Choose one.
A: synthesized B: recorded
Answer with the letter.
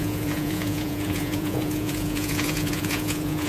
A